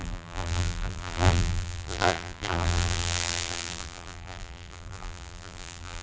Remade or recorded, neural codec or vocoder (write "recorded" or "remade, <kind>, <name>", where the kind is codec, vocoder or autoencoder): remade, vocoder, BigVGAN v2